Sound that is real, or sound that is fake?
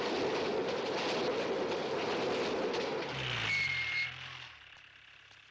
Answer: real